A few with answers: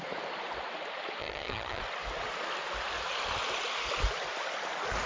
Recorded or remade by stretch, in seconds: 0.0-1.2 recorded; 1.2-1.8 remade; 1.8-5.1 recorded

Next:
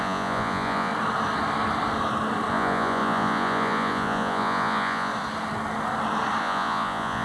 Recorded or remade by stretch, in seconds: 0.0-0.9 remade; 0.9-2.5 recorded; 2.5-5.1 remade; 5.1-6.4 recorded; 6.4-7.2 remade